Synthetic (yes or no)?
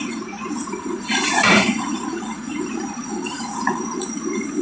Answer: yes